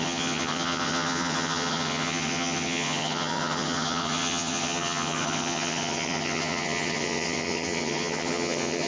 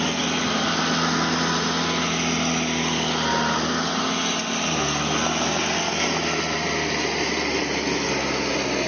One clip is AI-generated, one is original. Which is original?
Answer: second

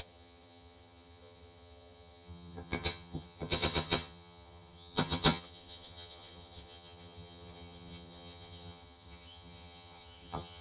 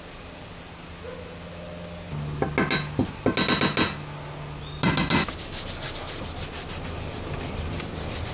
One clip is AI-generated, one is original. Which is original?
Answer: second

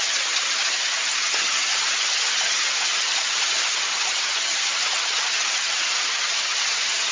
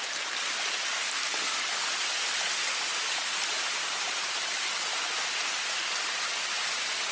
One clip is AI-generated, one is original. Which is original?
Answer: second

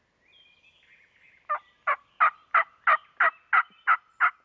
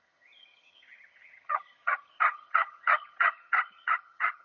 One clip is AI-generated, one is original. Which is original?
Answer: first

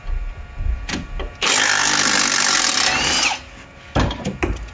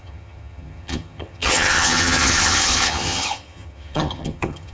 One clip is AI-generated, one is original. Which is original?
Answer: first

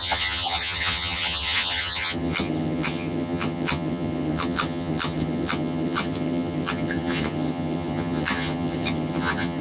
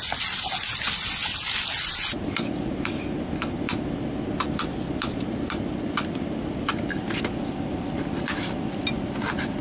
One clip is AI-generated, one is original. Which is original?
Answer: second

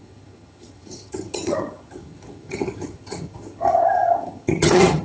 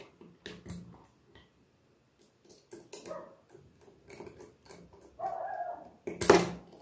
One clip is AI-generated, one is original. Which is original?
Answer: second